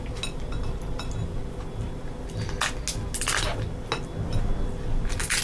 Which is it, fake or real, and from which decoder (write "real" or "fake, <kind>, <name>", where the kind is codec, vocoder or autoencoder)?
real